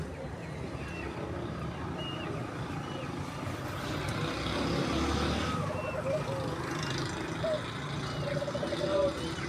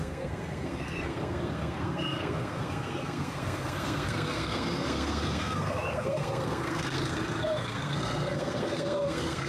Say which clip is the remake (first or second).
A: second